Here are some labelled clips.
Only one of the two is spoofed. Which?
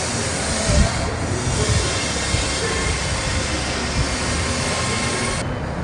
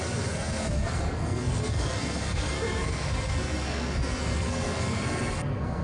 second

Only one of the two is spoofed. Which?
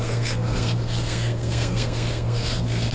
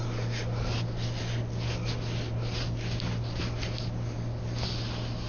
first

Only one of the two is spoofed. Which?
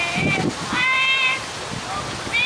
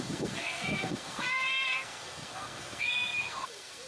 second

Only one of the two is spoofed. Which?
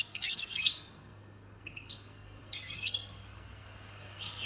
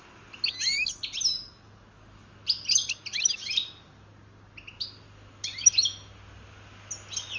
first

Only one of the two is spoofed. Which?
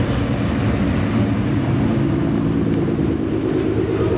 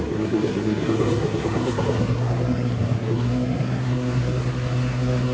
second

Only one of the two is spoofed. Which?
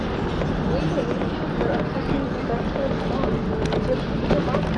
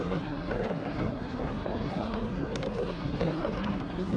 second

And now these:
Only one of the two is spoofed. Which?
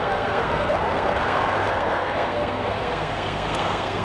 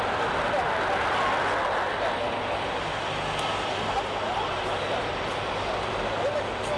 first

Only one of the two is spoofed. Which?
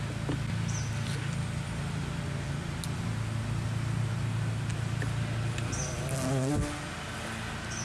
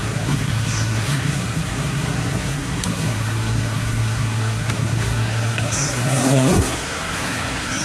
second